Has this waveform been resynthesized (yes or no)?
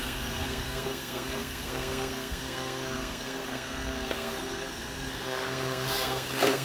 yes